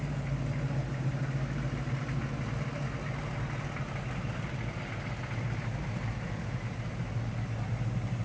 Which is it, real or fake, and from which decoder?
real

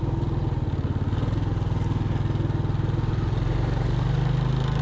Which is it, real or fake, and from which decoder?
real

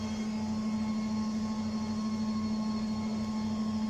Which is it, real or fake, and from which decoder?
real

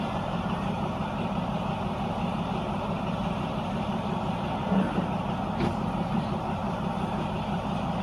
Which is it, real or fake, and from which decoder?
fake, vocoder, BigVGAN v2